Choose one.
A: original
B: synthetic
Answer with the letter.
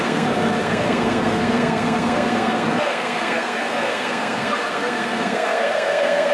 B